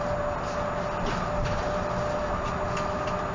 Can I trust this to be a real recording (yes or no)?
yes